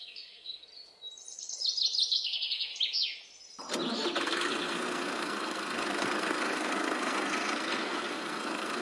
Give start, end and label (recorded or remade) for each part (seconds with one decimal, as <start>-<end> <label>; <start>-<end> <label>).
0.0-0.7 remade; 0.7-2.1 recorded; 2.1-2.7 remade; 2.7-4.2 recorded; 4.2-8.8 remade